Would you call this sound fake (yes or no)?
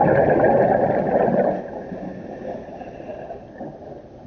no